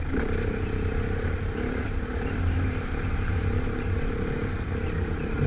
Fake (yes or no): yes